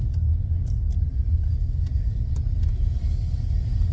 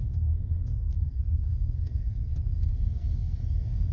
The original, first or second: first